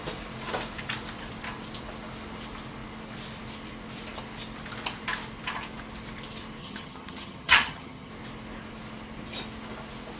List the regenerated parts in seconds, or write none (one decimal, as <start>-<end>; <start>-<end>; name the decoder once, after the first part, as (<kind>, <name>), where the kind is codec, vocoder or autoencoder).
6.6-8.1 (vocoder, HiFi-GAN)